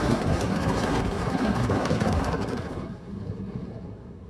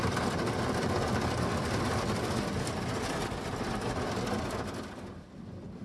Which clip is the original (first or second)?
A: second